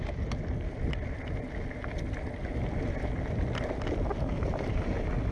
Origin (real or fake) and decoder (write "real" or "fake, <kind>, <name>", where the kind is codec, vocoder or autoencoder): real